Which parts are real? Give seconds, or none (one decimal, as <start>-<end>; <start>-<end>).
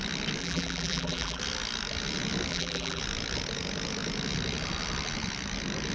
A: 0.0-0.4; 1.4-2.5; 3.0-5.9